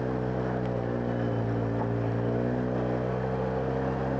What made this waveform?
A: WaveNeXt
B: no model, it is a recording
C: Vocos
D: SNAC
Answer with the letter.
B